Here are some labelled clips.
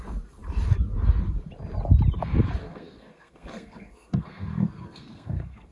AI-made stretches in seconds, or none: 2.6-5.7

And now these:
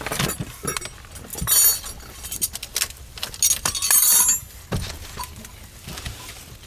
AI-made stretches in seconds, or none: none

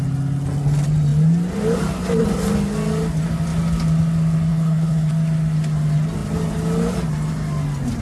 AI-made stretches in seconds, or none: 4.5-5.1

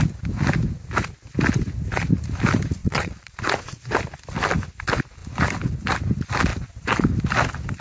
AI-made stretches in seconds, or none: 2.8-3.9

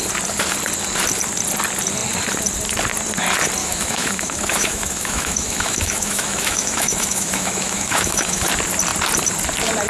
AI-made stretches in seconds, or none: 3.6-8.5

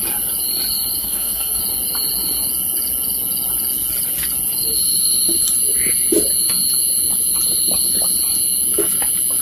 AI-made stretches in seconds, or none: 1.0-1.6

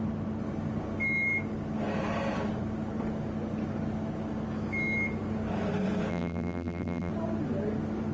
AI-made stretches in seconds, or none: 6.1-7.1